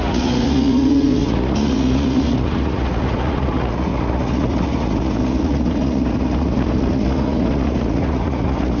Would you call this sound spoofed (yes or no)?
yes